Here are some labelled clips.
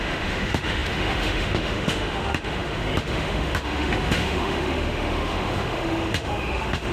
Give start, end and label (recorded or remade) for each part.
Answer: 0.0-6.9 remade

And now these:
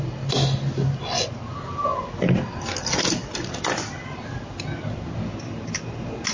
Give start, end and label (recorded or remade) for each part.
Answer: 0.0-6.3 recorded

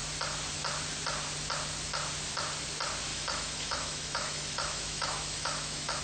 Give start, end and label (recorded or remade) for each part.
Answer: 0.0-3.1 recorded; 3.1-6.0 remade